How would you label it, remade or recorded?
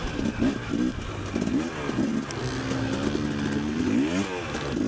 recorded